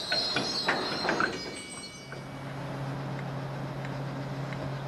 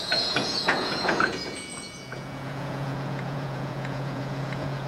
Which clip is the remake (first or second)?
second